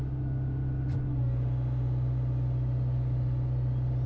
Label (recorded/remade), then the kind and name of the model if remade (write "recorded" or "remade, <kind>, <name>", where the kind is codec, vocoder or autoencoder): recorded